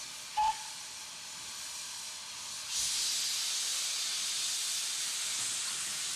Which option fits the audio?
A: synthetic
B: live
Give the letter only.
B